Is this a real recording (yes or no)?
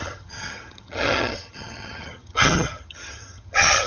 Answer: no